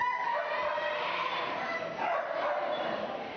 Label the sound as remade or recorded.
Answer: recorded